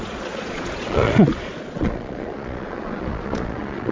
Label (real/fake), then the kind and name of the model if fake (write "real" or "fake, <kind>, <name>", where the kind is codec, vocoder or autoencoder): fake, vocoder, Vocos